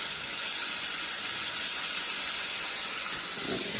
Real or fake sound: fake